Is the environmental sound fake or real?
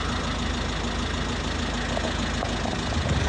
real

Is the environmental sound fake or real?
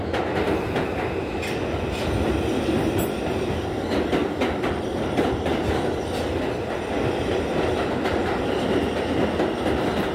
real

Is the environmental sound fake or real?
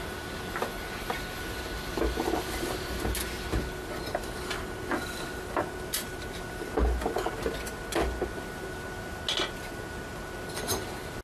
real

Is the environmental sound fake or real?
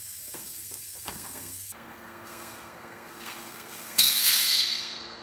fake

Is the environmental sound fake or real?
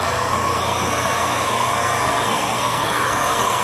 fake